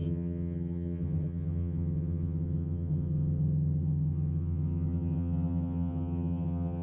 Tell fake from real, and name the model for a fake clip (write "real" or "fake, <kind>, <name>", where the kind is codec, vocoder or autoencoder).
fake, vocoder, HiFi-GAN